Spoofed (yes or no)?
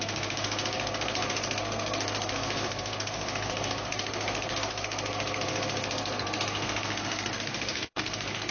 yes